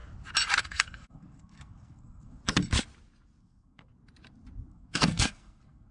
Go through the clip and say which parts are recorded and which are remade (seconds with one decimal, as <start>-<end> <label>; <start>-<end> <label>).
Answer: 0.0-0.6 recorded; 0.6-2.4 remade; 2.4-3.4 recorded; 3.4-3.9 remade; 3.9-4.7 recorded; 4.7-5.9 remade